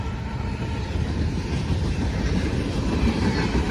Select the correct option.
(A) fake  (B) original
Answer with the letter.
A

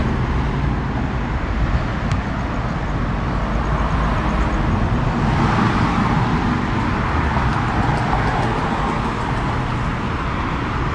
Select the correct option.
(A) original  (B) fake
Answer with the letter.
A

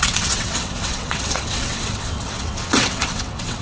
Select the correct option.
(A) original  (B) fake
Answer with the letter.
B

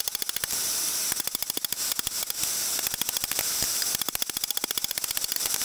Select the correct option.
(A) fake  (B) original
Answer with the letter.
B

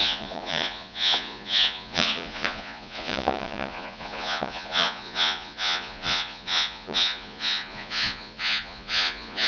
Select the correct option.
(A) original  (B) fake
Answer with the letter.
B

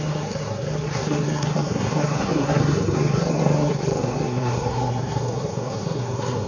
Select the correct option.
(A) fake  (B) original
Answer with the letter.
A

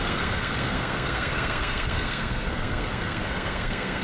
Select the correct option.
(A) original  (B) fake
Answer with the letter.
B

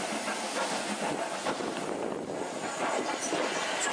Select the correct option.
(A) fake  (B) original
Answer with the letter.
B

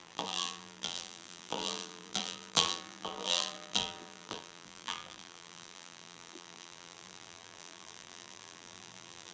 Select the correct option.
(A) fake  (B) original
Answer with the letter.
A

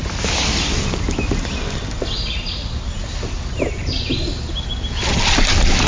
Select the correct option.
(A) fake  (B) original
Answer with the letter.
B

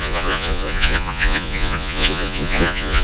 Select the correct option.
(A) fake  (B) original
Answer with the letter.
A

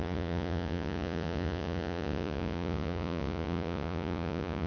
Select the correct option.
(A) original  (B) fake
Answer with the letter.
B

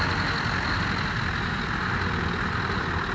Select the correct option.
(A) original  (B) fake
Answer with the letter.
A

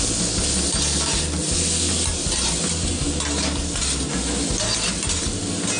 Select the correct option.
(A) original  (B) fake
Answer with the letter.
A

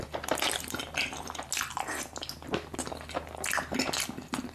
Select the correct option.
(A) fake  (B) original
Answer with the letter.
B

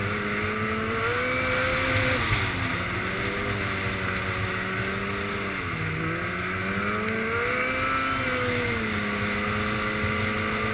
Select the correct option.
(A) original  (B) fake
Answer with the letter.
A